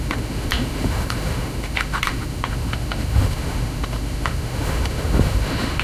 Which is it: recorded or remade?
remade